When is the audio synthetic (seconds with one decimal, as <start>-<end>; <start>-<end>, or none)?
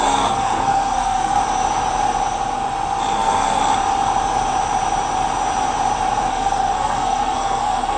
0.0-1.4; 3.1-3.6; 6.3-8.0